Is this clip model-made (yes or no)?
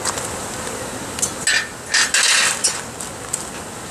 no